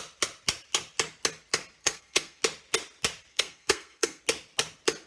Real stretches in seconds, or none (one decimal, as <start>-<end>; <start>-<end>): 0.0-1.8; 2.4-3.3; 4.2-5.1